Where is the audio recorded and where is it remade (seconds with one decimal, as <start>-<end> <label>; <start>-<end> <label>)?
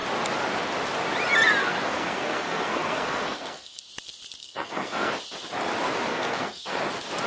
0.0-1.6 recorded; 1.6-3.8 remade; 3.8-4.4 recorded; 4.4-5.1 remade; 5.1-6.1 recorded; 6.1-6.8 remade; 6.8-7.3 recorded